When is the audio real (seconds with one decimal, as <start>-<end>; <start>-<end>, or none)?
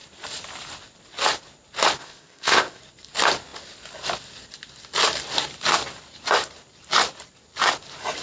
0.0-2.0; 2.8-8.2